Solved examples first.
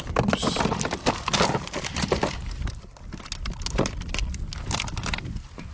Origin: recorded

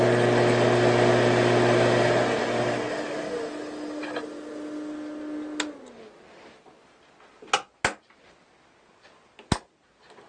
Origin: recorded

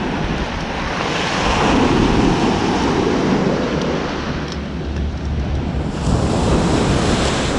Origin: recorded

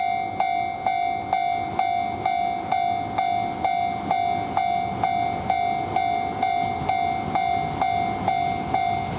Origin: recorded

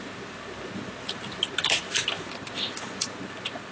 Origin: recorded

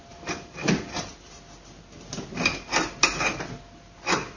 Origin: recorded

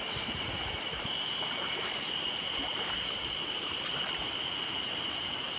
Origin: remade